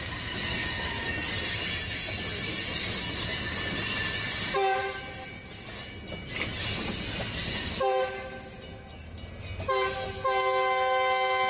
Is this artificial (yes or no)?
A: no